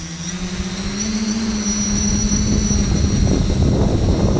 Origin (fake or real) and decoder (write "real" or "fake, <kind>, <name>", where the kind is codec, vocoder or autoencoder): real